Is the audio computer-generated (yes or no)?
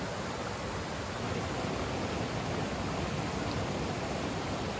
no